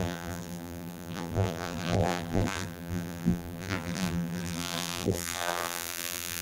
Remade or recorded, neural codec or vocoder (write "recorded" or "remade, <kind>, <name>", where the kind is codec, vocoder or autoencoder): remade, vocoder, BigVGAN v2